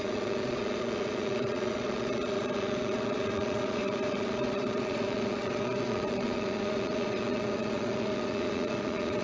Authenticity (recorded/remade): remade